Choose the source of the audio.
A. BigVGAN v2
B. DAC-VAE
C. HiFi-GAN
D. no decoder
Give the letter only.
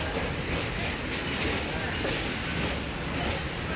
D